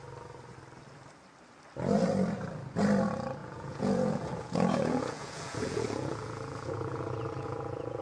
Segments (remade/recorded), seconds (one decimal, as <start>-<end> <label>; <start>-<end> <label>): 0.0-3.4 recorded; 3.4-8.0 remade